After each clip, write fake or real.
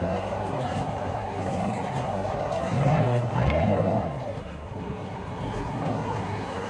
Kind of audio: fake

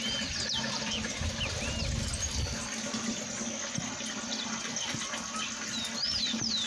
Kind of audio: real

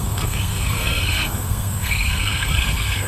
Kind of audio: fake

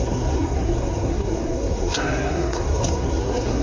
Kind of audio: fake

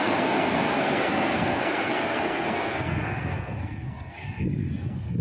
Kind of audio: fake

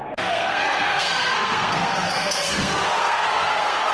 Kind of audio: fake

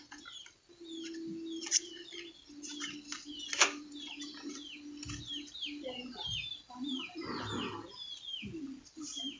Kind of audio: real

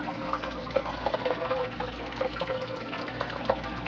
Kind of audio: fake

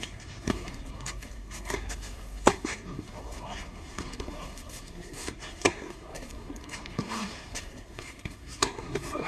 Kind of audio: fake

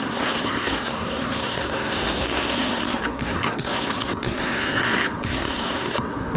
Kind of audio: fake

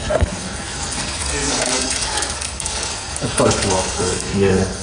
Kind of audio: fake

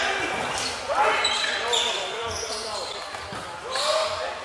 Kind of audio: real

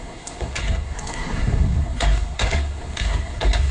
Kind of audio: fake